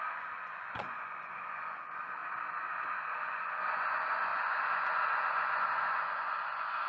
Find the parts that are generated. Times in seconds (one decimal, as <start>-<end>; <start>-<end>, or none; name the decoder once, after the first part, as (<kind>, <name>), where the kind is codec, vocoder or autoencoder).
0.0-2.2 (vocoder, Vocos); 3.0-6.9